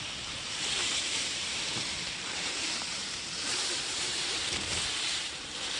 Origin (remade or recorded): remade